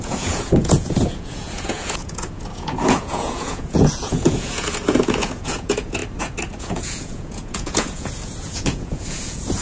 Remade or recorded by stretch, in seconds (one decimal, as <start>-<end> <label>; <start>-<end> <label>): 0.0-6.0 remade; 6.0-6.6 recorded; 6.6-9.6 remade

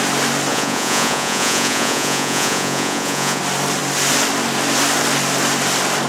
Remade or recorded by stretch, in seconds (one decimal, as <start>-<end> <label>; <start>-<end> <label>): 0.0-0.5 recorded; 0.5-3.4 remade; 3.4-6.1 recorded

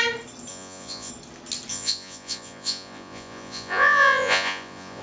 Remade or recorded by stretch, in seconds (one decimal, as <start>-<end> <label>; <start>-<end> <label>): 0.0-0.5 recorded; 0.5-1.1 remade; 1.1-1.7 recorded; 1.7-5.0 remade

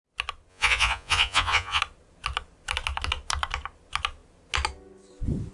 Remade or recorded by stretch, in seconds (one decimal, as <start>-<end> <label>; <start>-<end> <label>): 0.0-0.5 recorded; 0.5-1.8 remade; 1.8-5.5 recorded